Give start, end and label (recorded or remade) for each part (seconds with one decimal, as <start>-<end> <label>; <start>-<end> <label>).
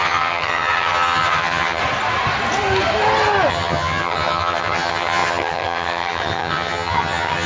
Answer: 0.0-1.8 remade; 1.8-3.5 recorded; 3.5-7.5 remade